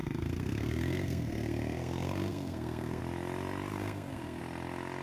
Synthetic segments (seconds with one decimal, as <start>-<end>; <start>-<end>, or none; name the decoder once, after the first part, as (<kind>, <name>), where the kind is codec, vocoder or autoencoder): 0.0-3.0 (codec, SNAC); 3.7-4.4